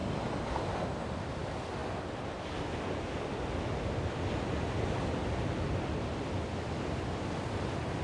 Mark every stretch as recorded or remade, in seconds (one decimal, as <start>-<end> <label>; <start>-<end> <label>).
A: 0.0-8.0 recorded